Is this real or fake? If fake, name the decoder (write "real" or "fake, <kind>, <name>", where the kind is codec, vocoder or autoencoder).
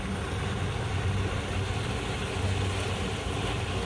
real